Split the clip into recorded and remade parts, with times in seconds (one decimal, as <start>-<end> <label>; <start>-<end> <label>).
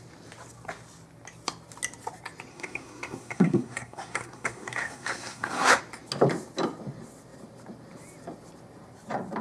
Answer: 0.0-2.5 recorded; 2.5-5.8 remade; 5.8-9.4 recorded